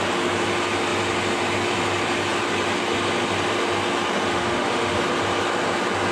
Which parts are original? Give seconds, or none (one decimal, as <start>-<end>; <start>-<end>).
0.0-4.3; 5.0-6.1